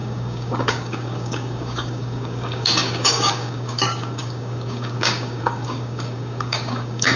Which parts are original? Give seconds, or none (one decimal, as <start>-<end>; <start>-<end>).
none